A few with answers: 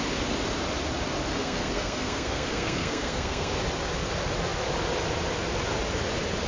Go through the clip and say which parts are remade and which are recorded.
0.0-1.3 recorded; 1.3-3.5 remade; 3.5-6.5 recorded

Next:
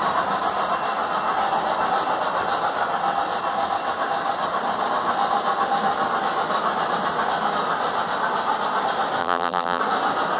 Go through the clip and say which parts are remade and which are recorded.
0.0-9.2 recorded; 9.2-9.8 remade; 9.8-10.4 recorded

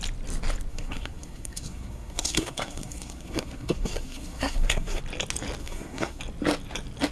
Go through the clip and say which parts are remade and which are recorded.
0.0-0.7 recorded; 0.7-5.0 remade; 5.0-5.6 recorded; 5.6-6.2 remade; 6.2-7.1 recorded

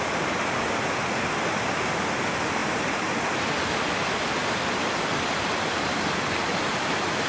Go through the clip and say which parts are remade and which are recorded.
0.0-2.6 recorded; 2.6-3.5 remade; 3.5-7.3 recorded